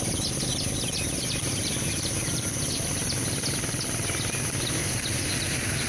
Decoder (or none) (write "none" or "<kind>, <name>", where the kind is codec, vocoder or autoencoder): none